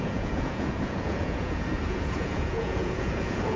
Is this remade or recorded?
remade